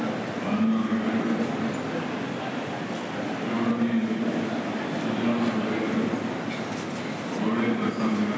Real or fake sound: real